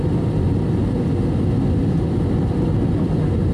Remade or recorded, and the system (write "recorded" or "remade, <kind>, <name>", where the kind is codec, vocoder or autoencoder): recorded